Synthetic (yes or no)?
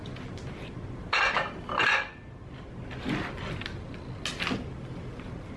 no